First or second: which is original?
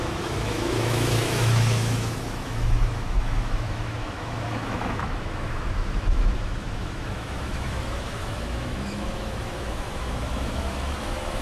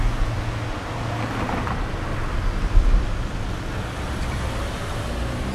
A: second